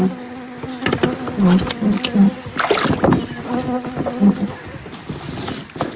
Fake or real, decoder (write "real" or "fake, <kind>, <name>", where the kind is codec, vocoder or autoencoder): real